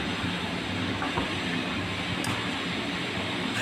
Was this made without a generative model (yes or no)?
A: yes